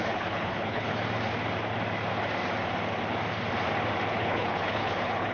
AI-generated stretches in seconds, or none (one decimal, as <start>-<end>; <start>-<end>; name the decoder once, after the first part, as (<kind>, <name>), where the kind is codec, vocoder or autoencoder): 0.0-0.9 (codec, HILCodec); 4.1-5.3